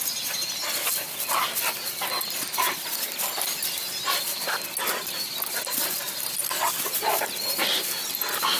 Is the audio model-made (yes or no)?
no